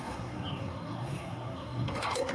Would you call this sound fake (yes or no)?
yes